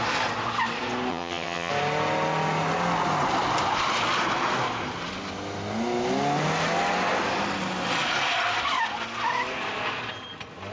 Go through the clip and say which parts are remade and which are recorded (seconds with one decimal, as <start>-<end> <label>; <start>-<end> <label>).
0.0-1.1 recorded; 1.1-1.7 remade; 1.7-10.7 recorded